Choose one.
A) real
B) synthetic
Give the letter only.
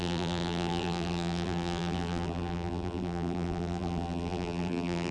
B